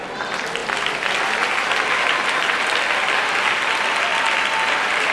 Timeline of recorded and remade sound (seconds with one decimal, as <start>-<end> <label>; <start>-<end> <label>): 0.0-5.1 recorded